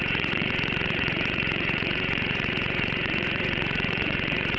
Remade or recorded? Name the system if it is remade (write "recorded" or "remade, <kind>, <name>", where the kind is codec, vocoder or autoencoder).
remade, vocoder, Vocos